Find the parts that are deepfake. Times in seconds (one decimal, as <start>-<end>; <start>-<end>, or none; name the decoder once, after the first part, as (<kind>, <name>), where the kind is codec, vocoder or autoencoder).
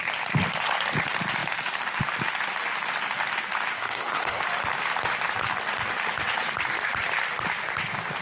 3.8-4.4 (codec, SNAC)